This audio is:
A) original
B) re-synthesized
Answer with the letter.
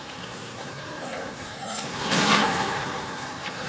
B